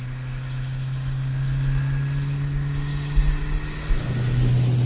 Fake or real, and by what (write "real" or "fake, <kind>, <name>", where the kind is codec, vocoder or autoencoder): real